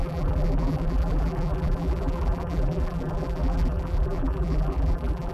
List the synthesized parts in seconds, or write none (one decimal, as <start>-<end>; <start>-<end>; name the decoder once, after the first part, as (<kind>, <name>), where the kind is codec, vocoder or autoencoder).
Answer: 0.0-5.3 (vocoder, BigVGAN v2)